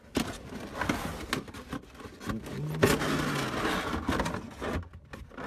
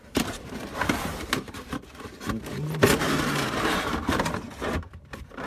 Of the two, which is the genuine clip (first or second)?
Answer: first